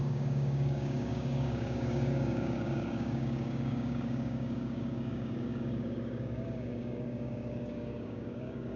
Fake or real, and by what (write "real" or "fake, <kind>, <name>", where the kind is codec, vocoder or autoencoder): fake, codec, DAC